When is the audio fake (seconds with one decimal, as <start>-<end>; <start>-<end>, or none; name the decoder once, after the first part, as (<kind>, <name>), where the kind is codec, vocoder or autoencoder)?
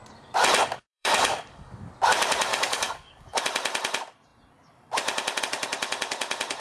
0.6-1.9 (codec, DAC); 2.5-3.4